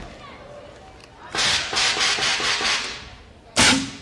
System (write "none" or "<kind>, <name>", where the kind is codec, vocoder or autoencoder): none